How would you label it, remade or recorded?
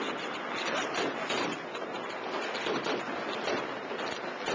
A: recorded